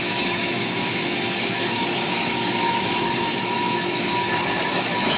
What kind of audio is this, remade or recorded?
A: remade